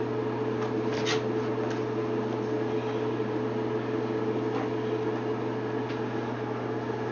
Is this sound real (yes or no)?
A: yes